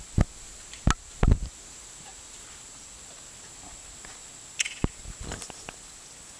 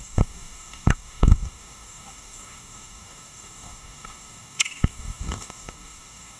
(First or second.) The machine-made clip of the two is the second